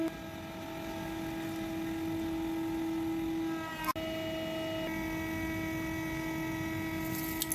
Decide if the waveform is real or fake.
real